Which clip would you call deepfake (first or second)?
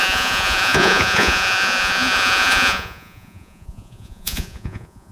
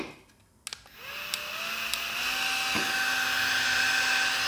first